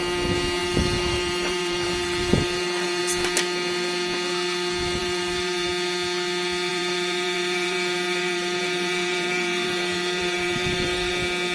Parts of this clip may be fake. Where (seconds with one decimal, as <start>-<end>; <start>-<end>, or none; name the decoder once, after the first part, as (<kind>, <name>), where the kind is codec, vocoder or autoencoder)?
0.6-3.0 (vocoder, BigVGAN v2); 5.0-5.7; 6.7-11.1